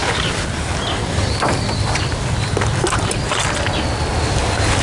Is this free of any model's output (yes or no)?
yes